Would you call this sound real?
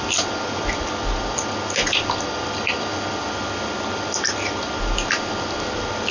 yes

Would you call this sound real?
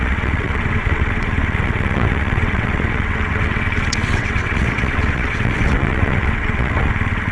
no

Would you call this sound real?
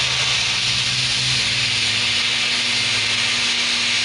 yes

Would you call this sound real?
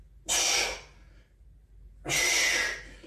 yes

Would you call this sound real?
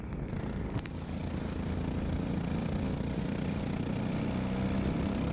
yes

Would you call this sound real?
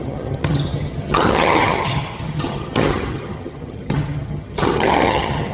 no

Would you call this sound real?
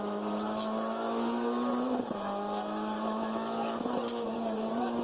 no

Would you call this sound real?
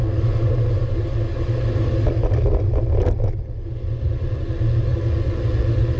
yes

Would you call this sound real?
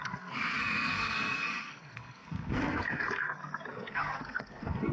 no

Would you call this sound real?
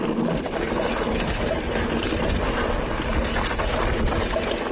yes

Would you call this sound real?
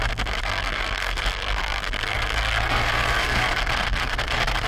no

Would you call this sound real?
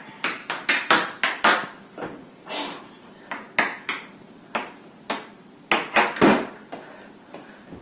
yes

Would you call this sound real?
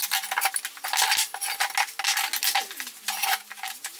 yes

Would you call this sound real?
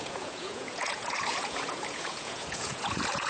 no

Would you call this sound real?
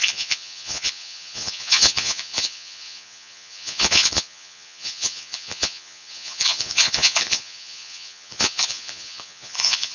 no